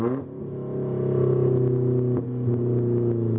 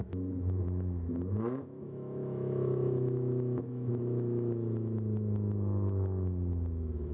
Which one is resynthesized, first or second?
second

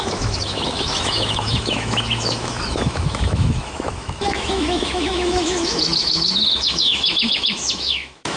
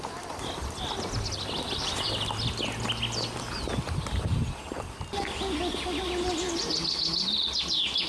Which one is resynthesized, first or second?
first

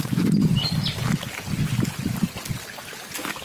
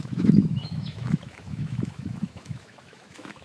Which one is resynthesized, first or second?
second